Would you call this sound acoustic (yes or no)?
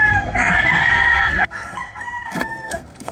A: no